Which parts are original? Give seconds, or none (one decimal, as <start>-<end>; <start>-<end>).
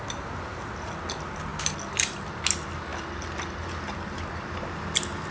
0.0-5.3